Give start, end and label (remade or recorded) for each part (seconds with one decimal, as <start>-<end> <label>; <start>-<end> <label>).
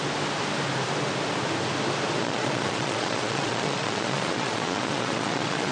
0.0-2.2 recorded; 2.2-5.7 remade